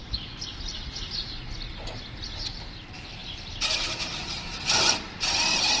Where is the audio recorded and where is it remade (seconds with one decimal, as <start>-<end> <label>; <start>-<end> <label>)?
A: 0.0-5.8 recorded